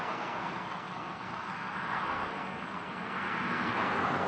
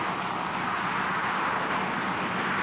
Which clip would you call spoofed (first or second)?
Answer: first